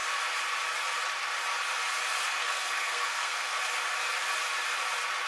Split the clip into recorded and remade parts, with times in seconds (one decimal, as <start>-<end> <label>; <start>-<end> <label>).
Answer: 0.0-2.2 recorded; 2.2-3.6 remade; 3.6-5.3 recorded